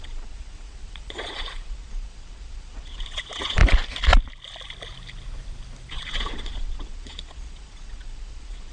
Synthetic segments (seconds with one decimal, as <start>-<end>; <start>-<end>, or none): 0.0-3.6; 5.9-8.7